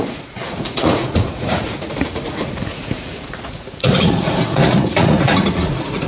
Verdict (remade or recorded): remade